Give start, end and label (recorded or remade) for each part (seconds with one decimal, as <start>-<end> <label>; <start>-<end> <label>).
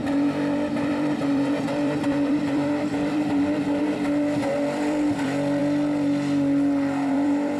0.0-5.6 remade; 5.6-7.1 recorded; 7.1-7.6 remade